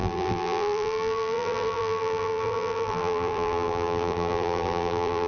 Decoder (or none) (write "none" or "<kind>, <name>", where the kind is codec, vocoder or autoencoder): vocoder, BigVGAN v2